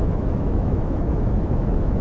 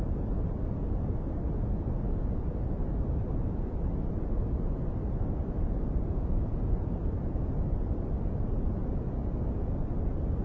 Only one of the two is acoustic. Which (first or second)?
second